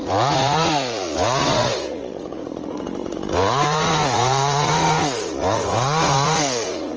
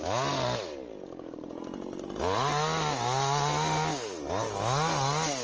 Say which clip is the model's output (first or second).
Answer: first